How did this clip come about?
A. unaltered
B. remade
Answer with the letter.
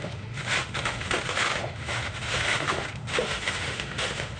B